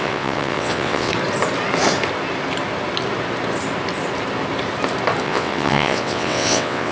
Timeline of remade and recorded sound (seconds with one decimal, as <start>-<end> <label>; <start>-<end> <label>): 0.0-1.1 remade; 1.1-5.2 recorded; 5.2-6.9 remade